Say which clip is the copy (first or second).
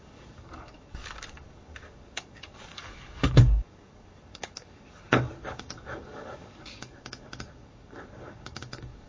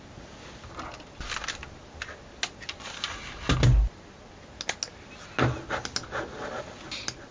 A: first